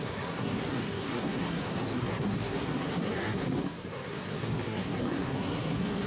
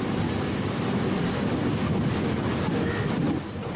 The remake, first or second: first